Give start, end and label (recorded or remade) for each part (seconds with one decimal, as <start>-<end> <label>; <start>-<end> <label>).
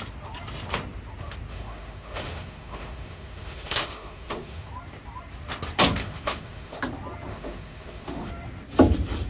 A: 0.0-1.5 recorded; 1.5-4.7 remade; 4.7-6.0 recorded; 6.0-6.8 remade; 6.8-7.3 recorded; 7.3-8.3 remade; 8.3-9.3 recorded